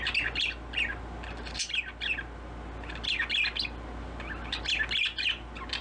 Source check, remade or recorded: recorded